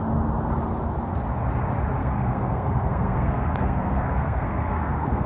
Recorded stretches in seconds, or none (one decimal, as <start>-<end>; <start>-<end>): 0.0-2.0